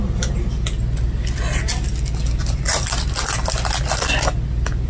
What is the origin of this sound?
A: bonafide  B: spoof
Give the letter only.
A